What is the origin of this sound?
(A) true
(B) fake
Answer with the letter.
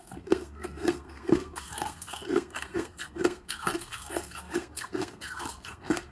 B